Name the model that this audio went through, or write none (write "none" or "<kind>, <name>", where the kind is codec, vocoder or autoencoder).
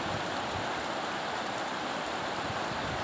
none